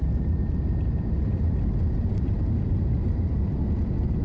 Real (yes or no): yes